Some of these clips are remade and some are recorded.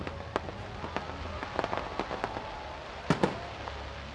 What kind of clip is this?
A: recorded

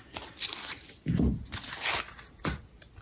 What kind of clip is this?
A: recorded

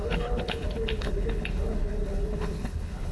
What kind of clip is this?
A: remade